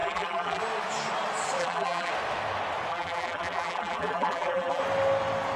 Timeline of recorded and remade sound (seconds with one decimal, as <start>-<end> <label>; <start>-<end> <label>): 0.0-0.6 remade; 0.6-1.6 recorded; 1.6-2.1 remade; 2.1-2.9 recorded; 2.9-4.8 remade; 4.8-5.6 recorded